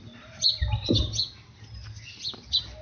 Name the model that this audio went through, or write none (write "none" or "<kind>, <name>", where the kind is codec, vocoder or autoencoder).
none